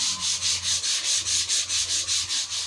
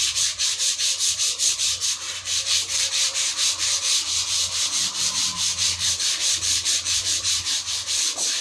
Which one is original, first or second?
first